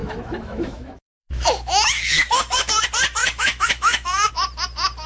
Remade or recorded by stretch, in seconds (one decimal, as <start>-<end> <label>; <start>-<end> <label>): 0.0-2.7 remade; 2.7-3.2 recorded; 3.2-4.3 remade; 4.3-5.1 recorded